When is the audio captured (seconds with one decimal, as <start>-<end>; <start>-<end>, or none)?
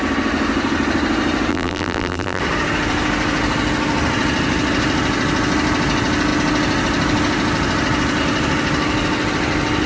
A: 0.0-1.5; 2.4-9.9